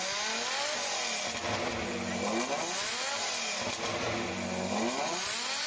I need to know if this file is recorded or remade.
recorded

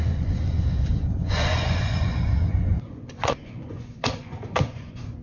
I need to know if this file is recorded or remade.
remade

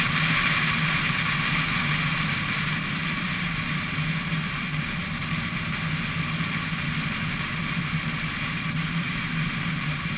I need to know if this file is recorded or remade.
remade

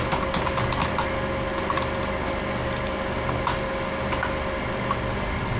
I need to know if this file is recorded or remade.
recorded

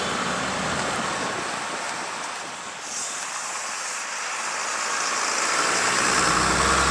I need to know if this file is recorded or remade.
recorded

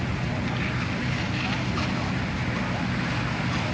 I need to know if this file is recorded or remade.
recorded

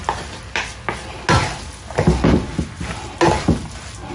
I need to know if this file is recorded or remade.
recorded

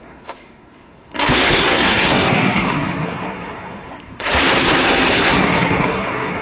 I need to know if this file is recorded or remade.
remade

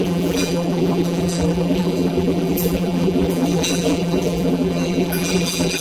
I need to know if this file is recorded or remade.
remade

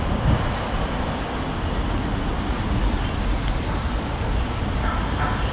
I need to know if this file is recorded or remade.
recorded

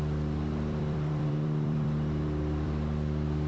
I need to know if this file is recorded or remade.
remade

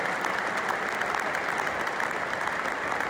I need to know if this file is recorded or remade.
recorded